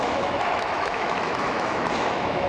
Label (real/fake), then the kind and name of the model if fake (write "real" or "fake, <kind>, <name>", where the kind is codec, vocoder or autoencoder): fake, autoencoder, DAC-VAE